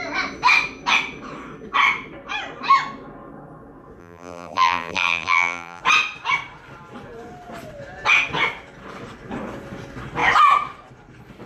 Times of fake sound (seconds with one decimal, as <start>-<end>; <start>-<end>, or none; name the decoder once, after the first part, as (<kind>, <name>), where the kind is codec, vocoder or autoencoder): 4.0-5.8 (vocoder, BigVGAN v2)